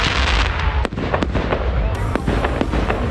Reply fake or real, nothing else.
real